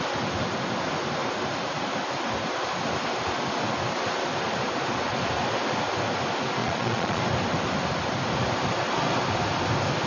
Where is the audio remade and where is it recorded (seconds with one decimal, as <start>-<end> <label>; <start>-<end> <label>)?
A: 0.0-6.6 recorded; 6.6-7.2 remade; 7.2-10.1 recorded